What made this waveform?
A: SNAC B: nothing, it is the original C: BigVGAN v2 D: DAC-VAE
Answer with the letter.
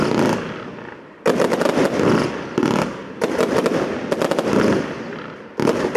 B